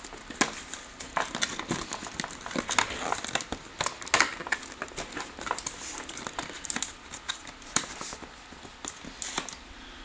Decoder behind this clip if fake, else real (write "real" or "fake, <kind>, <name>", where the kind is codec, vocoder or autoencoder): real